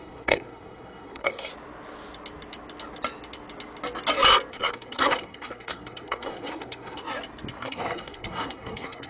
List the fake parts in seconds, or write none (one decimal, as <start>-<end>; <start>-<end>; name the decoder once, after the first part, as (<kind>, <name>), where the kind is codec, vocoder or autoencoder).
0.0-1.5 (codec, SNAC); 4.5-7.0; 7.6-9.1